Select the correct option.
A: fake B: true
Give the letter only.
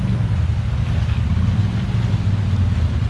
B